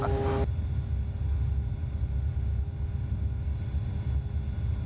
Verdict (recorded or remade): recorded